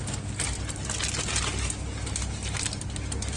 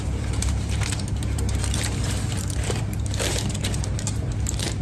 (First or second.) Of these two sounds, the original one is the first